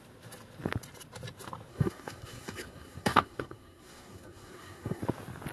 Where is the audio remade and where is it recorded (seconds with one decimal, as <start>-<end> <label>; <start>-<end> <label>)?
0.0-1.7 recorded; 1.7-5.0 remade; 5.0-5.5 recorded